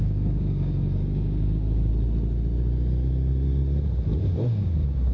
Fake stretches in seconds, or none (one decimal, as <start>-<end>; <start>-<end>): 0.0-1.9; 4.2-5.1